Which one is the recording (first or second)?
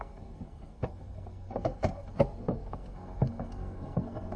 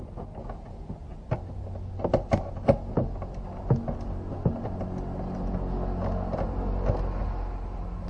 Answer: second